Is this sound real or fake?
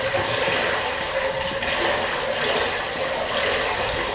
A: real